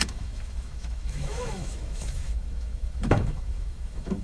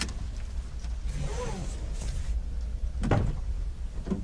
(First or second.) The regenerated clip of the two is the first